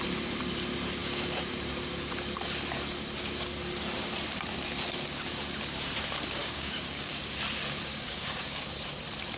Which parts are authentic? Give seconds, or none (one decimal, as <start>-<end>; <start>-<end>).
0.0-6.4; 7.2-7.9; 8.7-9.4